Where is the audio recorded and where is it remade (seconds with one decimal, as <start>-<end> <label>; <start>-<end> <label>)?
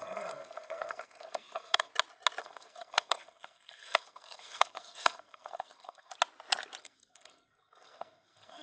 0.0-1.9 remade; 1.9-2.4 recorded; 2.4-6.1 remade; 6.1-6.8 recorded; 6.8-8.6 remade